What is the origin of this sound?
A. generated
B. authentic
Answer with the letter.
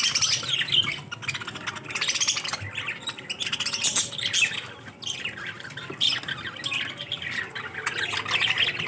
B